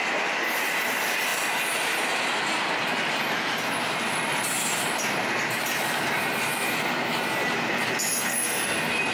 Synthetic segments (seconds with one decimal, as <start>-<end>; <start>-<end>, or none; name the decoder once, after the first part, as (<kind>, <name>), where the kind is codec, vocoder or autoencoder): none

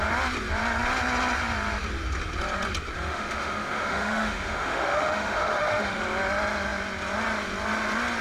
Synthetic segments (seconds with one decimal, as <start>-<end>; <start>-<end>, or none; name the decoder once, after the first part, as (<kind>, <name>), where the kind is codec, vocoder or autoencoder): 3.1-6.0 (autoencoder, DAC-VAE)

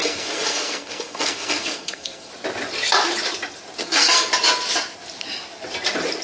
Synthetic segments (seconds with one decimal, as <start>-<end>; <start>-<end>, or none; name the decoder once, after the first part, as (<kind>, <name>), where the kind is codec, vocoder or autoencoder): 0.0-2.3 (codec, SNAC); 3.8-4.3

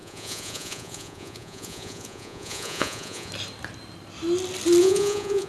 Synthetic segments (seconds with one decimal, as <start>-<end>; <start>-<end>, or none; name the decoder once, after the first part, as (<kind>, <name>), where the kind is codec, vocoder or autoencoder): 0.0-3.3 (vocoder, Vocos); 4.8-5.5